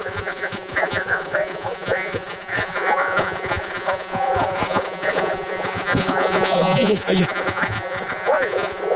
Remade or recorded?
remade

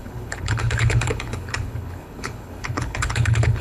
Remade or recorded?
remade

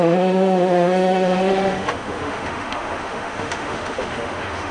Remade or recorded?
remade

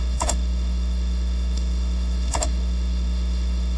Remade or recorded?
remade